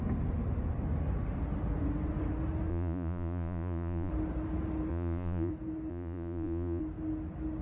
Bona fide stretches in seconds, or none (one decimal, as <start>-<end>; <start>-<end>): 0.0-2.7; 4.1-4.9; 5.5-5.9; 6.8-7.6